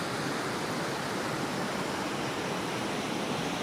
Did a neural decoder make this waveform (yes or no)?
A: no